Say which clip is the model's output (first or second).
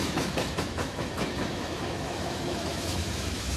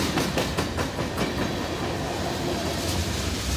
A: first